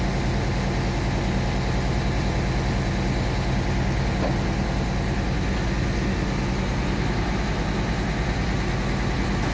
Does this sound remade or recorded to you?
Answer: recorded